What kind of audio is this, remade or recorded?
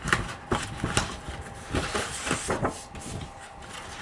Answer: recorded